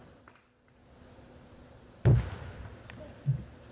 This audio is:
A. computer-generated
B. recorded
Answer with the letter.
B